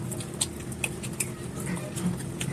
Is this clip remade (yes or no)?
no